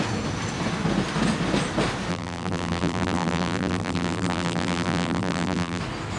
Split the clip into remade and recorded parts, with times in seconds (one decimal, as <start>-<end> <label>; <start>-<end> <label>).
0.0-2.1 recorded; 2.1-5.8 remade; 5.8-6.2 recorded